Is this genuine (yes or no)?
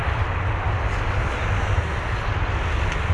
yes